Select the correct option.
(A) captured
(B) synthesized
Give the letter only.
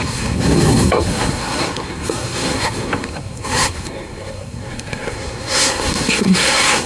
B